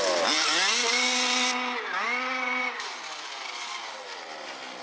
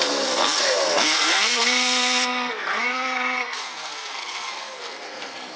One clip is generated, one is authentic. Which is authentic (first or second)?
first